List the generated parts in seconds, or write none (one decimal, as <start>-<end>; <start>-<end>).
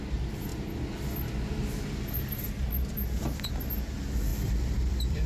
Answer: 4.3-5.3